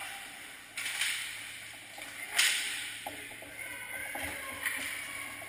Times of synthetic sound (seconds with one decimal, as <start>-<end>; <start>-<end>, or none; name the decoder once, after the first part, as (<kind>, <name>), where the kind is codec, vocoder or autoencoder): none